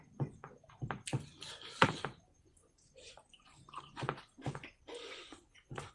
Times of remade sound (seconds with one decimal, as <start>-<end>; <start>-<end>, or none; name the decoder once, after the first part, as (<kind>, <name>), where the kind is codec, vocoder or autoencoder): 2.3-5.9 (vocoder, Vocos)